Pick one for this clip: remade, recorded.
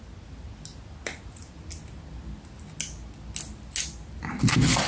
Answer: recorded